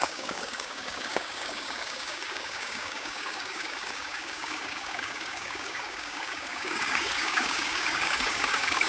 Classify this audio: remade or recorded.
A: remade